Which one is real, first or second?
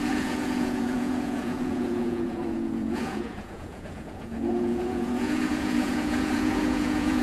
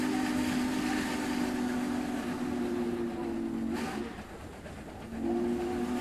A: second